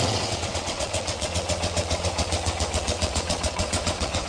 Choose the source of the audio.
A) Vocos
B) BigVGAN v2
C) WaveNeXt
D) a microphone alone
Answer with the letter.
C